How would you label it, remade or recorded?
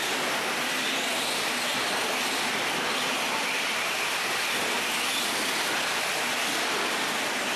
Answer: remade